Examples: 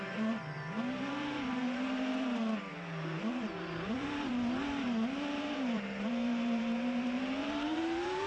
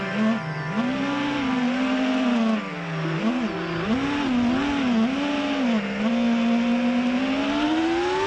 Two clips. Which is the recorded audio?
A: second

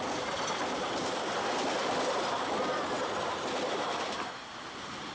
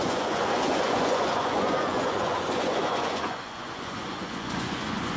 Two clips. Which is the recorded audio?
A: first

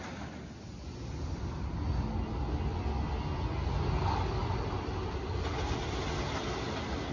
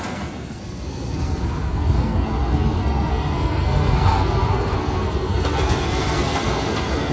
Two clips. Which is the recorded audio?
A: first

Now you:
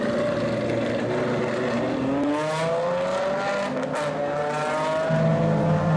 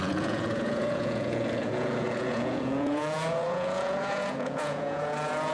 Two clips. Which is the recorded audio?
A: first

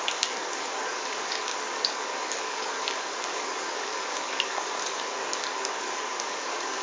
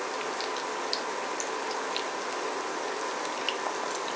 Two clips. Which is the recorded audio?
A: second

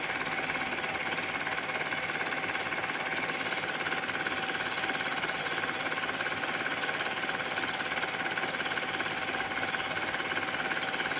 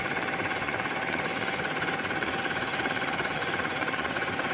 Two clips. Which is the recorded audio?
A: first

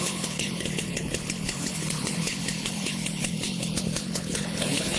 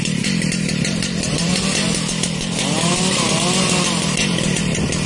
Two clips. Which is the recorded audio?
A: second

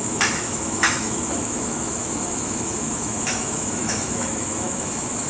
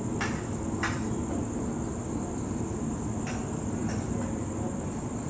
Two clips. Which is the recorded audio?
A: second